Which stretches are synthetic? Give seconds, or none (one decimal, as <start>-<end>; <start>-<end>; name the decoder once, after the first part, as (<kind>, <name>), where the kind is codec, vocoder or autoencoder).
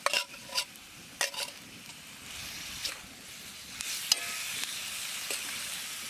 none